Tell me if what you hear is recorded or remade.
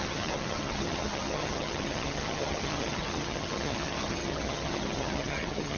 remade